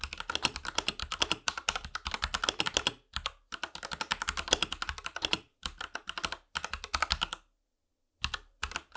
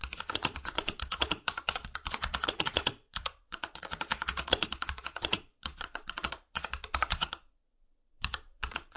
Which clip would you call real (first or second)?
first